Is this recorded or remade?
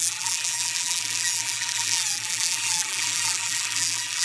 remade